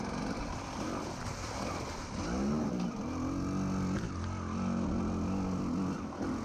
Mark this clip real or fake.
real